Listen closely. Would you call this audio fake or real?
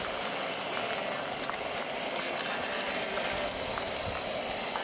real